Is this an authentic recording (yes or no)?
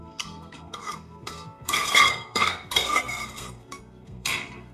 no